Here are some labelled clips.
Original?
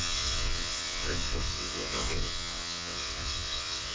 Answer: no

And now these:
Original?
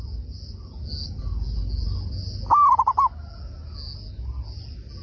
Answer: yes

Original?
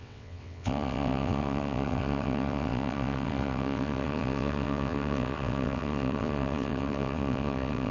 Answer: no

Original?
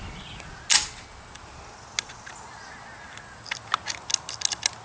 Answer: yes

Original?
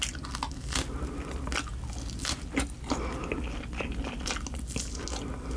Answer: yes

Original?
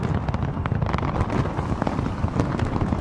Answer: yes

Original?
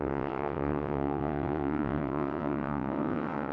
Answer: no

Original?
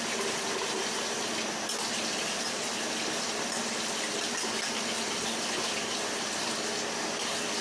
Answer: yes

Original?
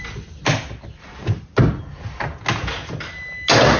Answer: yes